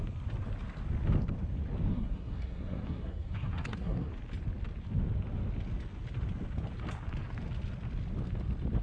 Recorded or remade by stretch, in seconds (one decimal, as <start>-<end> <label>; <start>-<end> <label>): 0.0-1.9 recorded; 1.9-4.1 remade; 4.1-8.8 recorded